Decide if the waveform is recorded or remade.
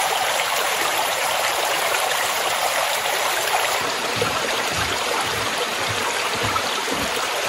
remade